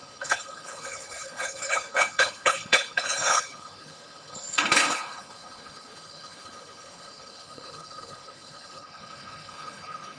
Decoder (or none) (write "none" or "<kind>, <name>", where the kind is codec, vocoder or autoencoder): codec, HILCodec